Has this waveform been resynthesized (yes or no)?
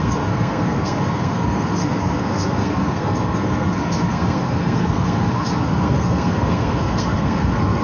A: yes